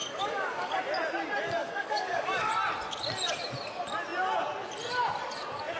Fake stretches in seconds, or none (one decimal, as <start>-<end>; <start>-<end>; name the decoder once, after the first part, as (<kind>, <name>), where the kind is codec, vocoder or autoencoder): 0.0-0.8 (codec, DAC); 1.6-2.5